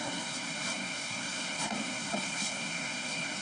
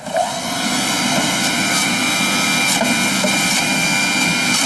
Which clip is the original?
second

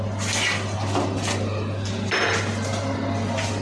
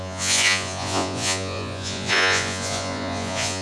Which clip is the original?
first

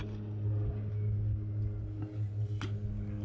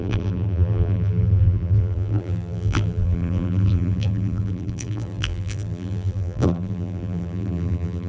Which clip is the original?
first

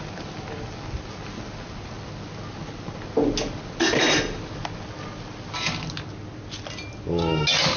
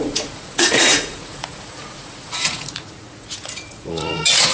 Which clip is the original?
first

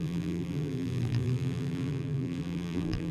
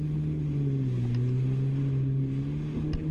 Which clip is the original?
second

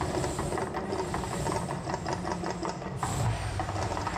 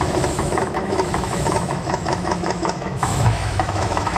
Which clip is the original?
first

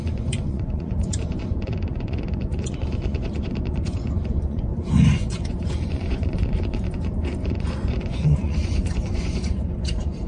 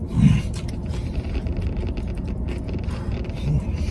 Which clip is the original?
second